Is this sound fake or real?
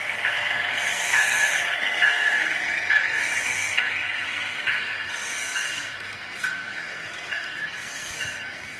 fake